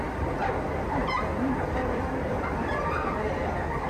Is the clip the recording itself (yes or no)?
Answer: yes